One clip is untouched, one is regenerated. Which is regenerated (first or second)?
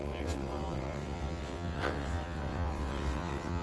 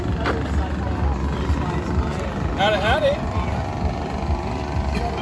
first